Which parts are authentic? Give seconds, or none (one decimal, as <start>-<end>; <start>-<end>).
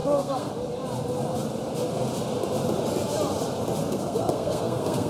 0.5-3.8